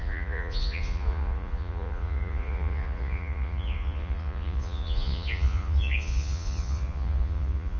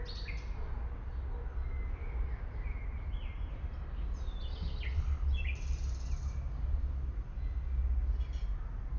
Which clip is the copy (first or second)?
first